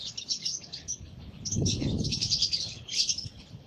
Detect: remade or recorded remade